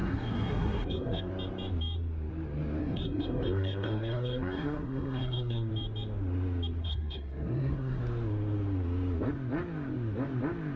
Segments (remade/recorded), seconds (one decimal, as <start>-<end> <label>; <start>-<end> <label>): 0.0-1.3 remade; 1.3-2.8 recorded; 2.8-5.7 remade; 5.7-6.8 recorded; 6.8-8.0 remade; 8.0-10.8 recorded